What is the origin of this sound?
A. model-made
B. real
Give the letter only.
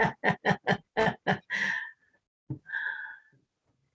B